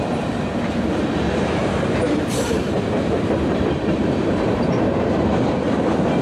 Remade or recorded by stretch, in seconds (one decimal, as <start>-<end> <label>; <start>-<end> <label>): 0.0-1.6 recorded; 1.6-5.3 remade; 5.3-6.2 recorded